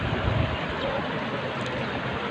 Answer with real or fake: real